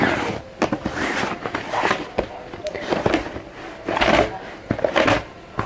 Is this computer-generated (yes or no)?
no